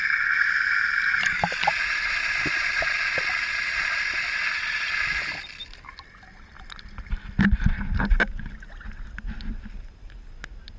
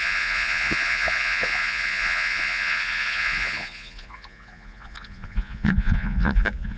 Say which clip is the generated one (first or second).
second